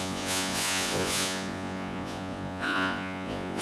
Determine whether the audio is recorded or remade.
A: remade